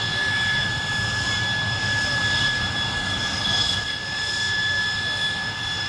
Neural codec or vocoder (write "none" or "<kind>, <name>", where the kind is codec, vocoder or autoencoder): none